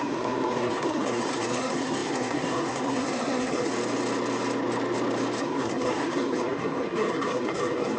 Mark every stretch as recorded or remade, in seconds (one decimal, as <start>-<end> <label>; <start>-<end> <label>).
0.0-3.7 remade; 3.7-5.4 recorded; 5.4-8.0 remade